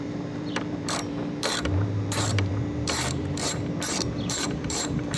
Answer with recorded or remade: remade